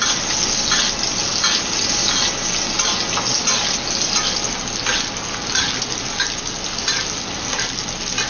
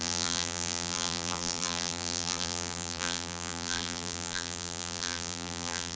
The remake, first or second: second